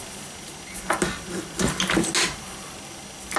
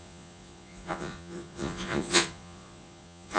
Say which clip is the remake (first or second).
second